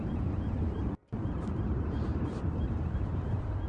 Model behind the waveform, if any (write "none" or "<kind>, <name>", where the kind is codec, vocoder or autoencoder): vocoder, BigVGAN v2